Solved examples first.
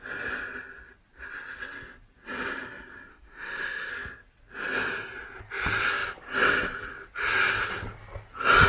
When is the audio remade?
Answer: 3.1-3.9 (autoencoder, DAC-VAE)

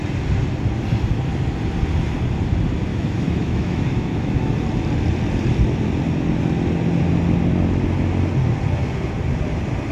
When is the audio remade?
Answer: 2.9-4.5 (autoencoder, DAC-VAE)

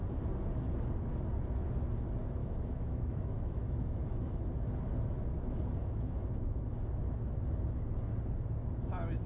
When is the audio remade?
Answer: 2.4-4.4 (autoencoder, DAC-VAE); 5.8-6.5